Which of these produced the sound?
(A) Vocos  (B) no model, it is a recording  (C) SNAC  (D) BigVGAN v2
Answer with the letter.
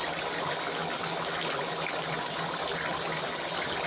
B